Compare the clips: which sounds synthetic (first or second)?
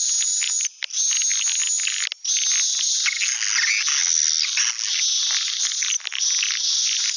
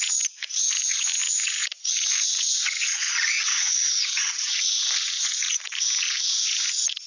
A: second